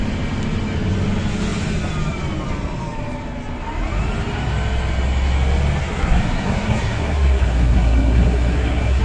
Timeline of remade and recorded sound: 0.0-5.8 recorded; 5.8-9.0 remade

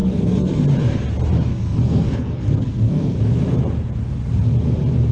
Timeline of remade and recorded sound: 0.0-0.6 remade; 0.6-1.5 recorded; 1.5-3.2 remade; 3.2-5.1 recorded

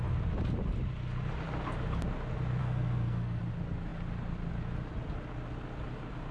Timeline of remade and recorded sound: 0.0-2.6 recorded; 2.6-3.4 remade; 3.4-6.3 recorded

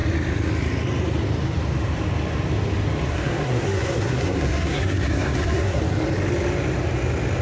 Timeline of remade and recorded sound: 0.0-3.1 recorded; 3.1-5.8 remade; 5.8-7.4 recorded

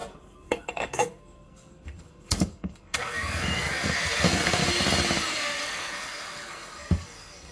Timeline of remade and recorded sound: 0.0-4.6 remade; 4.6-5.3 recorded; 5.3-7.5 remade

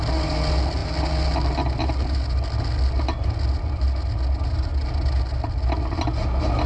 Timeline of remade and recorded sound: 0.0-6.7 recorded

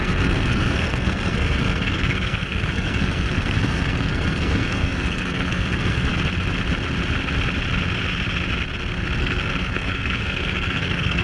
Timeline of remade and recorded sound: 0.0-6.1 remade; 6.1-9.2 recorded; 9.2-11.2 remade